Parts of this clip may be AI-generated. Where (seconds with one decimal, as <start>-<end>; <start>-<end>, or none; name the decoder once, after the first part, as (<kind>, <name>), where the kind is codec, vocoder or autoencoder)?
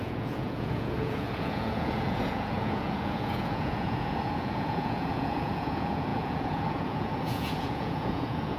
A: 0.0-8.6 (vocoder, Vocos)